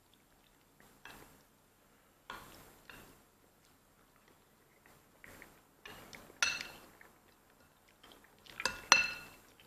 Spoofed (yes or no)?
no